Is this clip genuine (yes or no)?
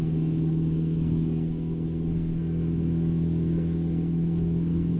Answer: no